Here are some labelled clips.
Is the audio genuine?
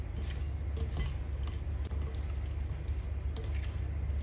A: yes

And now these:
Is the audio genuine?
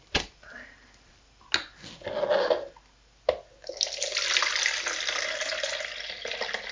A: yes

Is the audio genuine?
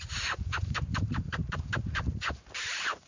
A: no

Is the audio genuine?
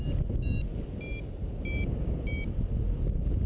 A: yes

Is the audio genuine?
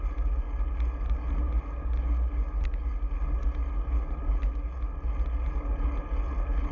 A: yes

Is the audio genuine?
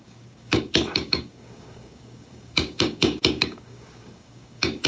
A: no